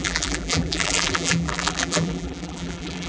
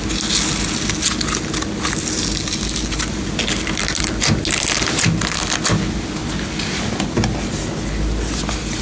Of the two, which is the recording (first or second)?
second